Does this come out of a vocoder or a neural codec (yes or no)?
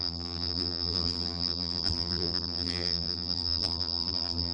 yes